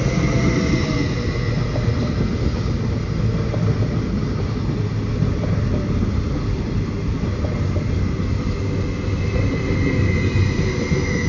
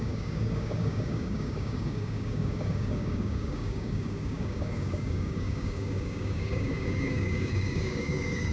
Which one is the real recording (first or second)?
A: first